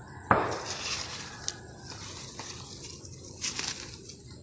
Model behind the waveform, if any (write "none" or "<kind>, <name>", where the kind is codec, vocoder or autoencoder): none